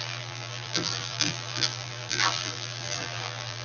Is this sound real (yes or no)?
no